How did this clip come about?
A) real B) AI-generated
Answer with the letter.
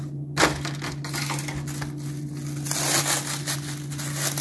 A